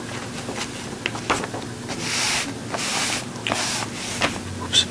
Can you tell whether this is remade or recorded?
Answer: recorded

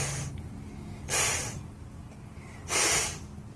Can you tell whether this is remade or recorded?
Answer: recorded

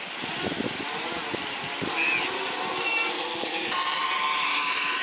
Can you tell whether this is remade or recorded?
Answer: recorded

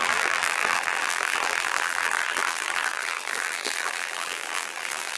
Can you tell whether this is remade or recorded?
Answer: remade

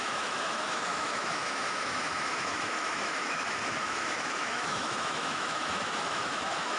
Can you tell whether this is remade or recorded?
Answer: remade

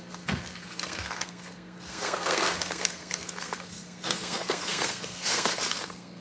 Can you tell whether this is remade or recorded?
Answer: remade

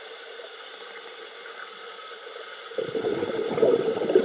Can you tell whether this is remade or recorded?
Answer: recorded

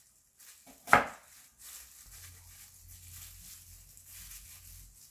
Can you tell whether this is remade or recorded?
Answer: recorded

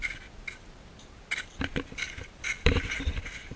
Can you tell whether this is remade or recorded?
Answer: recorded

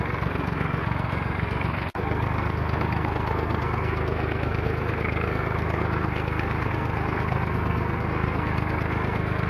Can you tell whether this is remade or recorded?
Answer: remade